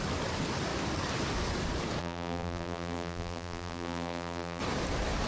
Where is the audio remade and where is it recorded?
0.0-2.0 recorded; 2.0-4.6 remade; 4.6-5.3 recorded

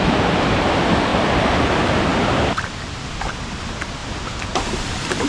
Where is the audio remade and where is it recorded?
0.0-1.1 remade; 1.1-1.7 recorded; 1.7-2.1 remade; 2.1-3.3 recorded; 3.3-4.0 remade; 4.0-4.6 recorded; 4.6-5.3 remade

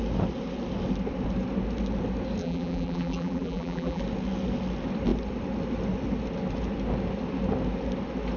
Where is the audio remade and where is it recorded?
0.0-2.4 recorded; 2.4-4.0 remade; 4.0-8.4 recorded